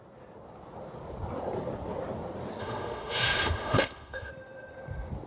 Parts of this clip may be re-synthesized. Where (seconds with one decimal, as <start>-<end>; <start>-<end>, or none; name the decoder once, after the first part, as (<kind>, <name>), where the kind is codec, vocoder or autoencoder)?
2.6-4.3 (autoencoder, DAC-VAE)